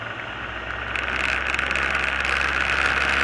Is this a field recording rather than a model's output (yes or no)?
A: yes